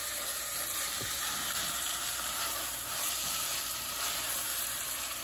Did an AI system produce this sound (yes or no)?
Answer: yes